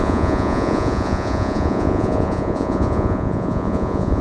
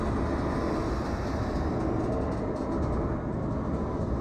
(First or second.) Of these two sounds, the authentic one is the second